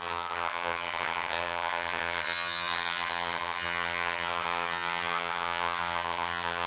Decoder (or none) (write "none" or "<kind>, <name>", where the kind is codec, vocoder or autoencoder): vocoder, HiFi-GAN